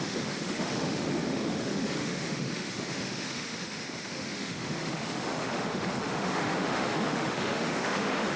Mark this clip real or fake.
fake